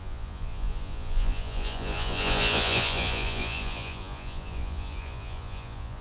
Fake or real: fake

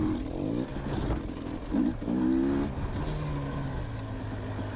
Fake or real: real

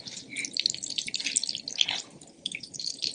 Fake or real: real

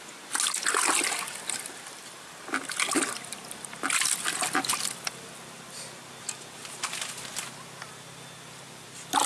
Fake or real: real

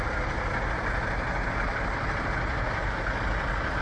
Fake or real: real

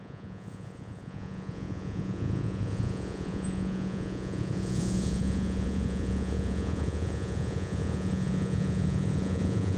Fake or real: fake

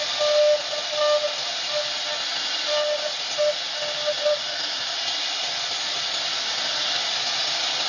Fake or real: real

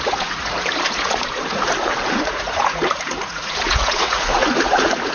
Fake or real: fake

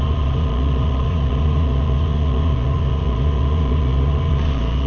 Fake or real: fake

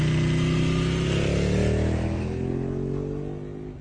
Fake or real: real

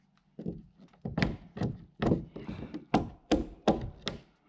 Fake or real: real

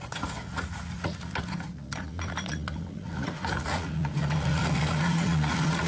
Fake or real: fake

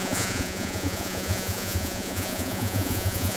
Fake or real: fake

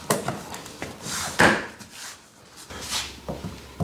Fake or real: real